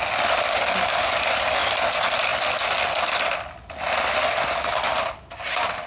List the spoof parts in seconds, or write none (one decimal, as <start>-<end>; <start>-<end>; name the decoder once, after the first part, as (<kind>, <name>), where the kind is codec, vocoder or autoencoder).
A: none